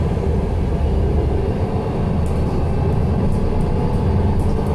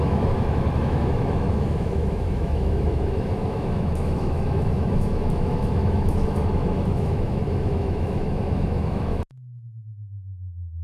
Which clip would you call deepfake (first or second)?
second